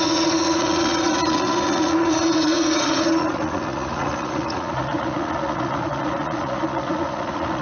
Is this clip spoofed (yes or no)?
yes